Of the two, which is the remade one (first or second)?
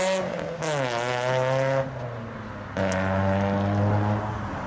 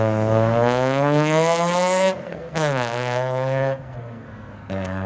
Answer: second